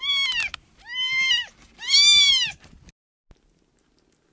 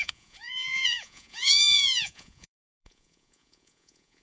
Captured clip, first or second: first